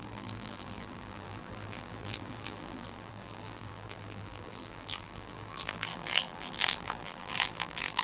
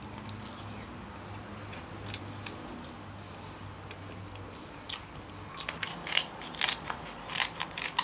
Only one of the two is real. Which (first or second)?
second